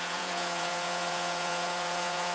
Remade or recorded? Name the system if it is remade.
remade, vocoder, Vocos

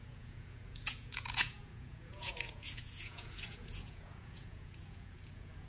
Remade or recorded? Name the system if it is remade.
remade, vocoder, Vocos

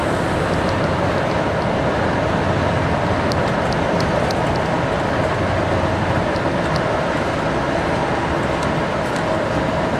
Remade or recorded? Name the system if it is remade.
recorded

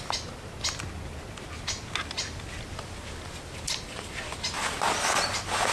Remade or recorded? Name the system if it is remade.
recorded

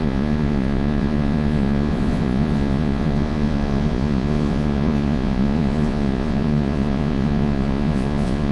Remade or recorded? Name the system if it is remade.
remade, vocoder, Vocos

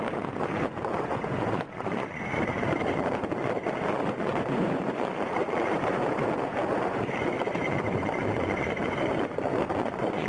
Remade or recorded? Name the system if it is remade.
remade, vocoder, Vocos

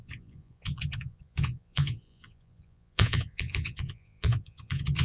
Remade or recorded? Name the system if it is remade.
remade, vocoder, Vocos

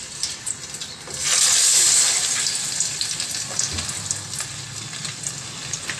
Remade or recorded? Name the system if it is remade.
recorded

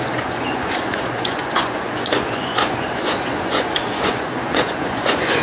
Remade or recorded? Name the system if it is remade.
remade, vocoder, Vocos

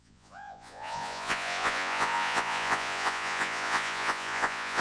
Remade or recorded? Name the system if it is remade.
remade, vocoder, Vocos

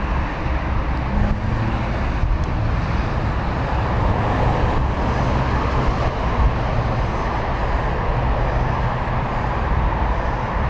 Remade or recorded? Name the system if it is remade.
recorded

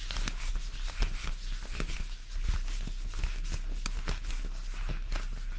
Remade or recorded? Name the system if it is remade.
recorded